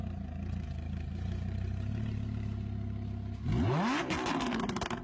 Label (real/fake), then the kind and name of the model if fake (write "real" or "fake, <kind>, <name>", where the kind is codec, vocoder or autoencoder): real